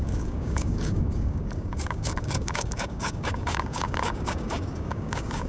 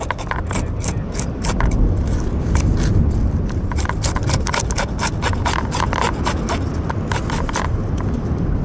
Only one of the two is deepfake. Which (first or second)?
first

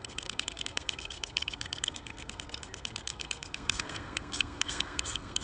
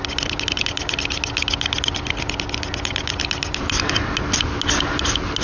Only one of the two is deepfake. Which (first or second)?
first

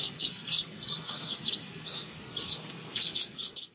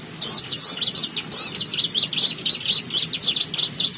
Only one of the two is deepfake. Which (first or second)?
first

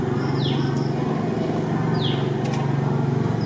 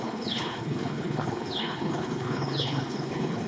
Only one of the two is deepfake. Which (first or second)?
second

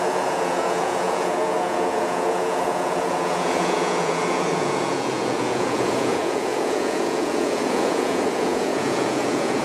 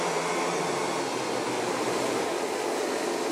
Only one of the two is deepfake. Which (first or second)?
first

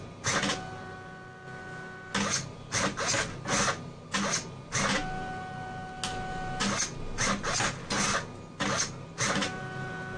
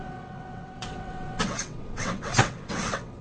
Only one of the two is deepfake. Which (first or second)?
second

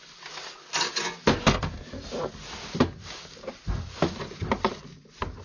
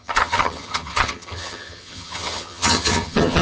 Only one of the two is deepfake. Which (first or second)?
second